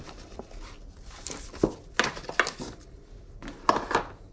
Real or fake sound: real